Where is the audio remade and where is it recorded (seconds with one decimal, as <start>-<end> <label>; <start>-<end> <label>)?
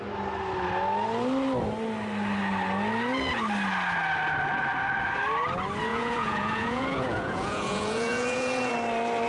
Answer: 0.0-5.9 recorded; 5.9-8.7 remade; 8.7-9.3 recorded